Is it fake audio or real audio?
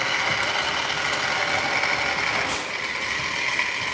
real